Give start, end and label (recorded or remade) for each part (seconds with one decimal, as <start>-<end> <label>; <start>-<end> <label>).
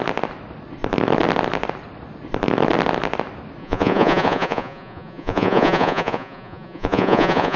0.0-3.6 recorded; 3.6-7.6 remade